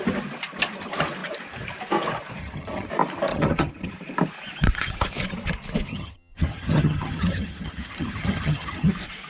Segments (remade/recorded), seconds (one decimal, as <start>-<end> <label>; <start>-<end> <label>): 0.0-2.4 recorded; 2.4-2.9 remade; 2.9-3.3 recorded; 3.3-3.9 remade; 3.9-5.9 recorded; 5.9-8.9 remade; 8.9-9.3 recorded